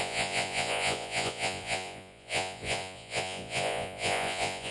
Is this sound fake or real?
fake